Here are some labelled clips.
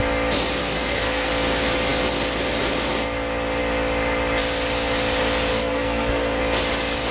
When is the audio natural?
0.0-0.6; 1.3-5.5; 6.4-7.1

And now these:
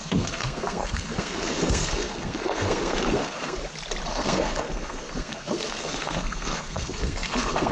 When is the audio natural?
3.6-4.1